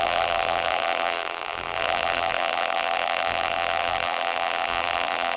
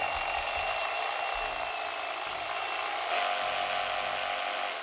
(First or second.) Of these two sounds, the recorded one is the second